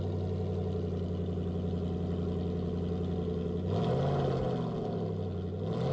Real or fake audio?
real